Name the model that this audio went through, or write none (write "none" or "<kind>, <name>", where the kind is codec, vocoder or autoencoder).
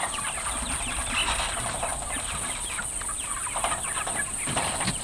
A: none